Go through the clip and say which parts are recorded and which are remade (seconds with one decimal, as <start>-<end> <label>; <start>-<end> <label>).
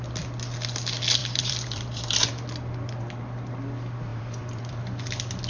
0.0-1.2 recorded; 1.2-2.3 remade; 2.3-4.1 recorded; 4.1-4.8 remade; 4.8-5.5 recorded